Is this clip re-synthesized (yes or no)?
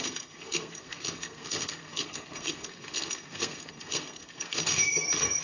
yes